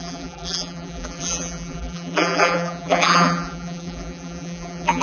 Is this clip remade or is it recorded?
remade